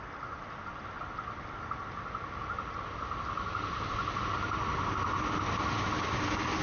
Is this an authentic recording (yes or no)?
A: yes